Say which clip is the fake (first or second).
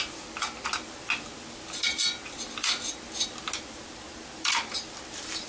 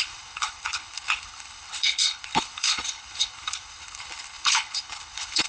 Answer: second